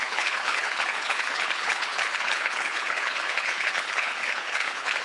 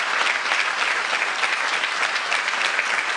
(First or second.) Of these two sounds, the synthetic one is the first